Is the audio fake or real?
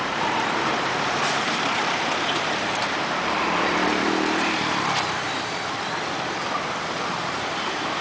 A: fake